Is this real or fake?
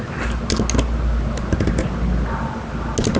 real